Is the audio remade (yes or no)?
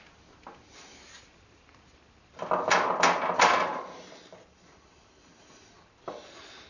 no